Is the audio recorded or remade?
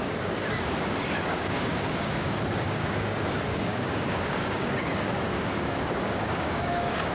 remade